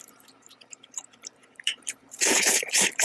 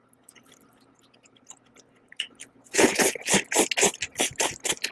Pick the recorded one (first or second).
second